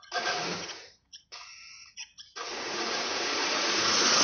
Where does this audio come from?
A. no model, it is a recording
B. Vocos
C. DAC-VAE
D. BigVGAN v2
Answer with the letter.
B